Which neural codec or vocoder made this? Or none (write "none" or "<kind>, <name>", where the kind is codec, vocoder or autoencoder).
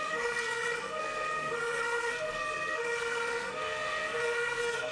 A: codec, SNAC